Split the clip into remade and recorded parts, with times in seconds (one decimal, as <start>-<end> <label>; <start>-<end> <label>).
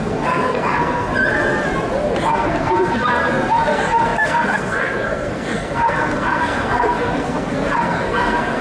0.0-1.1 remade; 1.1-2.3 recorded; 2.3-8.6 remade